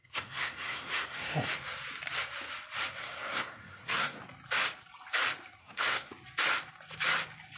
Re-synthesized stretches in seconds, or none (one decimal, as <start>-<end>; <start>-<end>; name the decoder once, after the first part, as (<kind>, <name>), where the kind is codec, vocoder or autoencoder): 0.0-1.5 (codec, SNAC); 3.0-4.2; 5.6-6.1